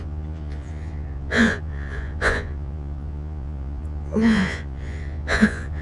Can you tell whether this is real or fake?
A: fake